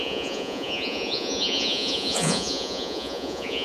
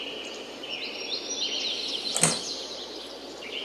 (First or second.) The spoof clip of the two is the first